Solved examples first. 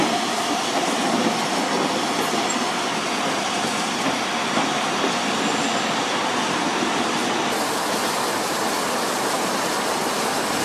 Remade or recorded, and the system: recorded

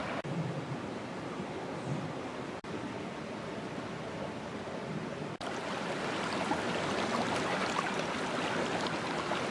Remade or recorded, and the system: recorded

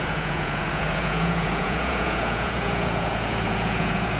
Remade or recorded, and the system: remade, vocoder, Vocos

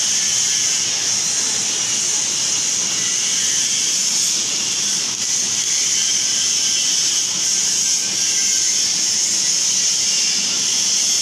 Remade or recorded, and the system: recorded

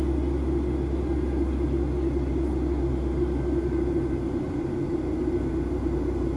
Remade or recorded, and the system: recorded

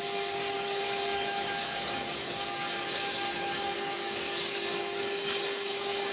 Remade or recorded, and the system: remade, codec, DAC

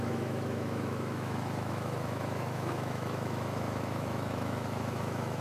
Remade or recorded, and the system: remade, autoencoder, DAC-VAE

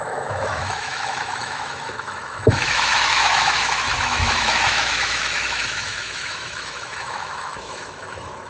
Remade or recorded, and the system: remade, autoencoder, DAC-VAE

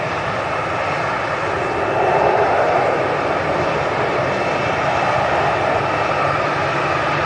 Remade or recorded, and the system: recorded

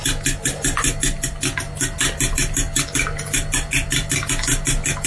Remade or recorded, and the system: recorded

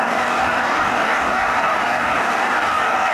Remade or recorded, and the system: remade, codec, DAC